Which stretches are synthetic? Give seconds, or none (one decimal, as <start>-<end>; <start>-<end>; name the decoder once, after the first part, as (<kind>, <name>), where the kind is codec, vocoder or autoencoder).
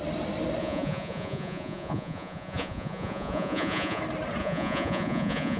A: 0.6-4.0 (vocoder, Vocos); 4.4-5.6